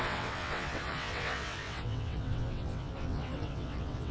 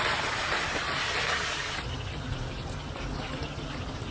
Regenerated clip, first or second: first